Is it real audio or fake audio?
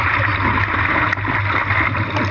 real